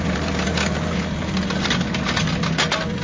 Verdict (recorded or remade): recorded